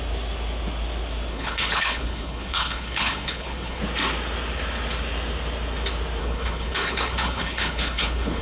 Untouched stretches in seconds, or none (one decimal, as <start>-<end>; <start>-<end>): 0.0-1.3; 3.8-6.2